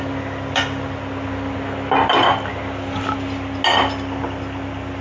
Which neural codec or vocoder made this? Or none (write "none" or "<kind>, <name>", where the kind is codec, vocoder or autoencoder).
none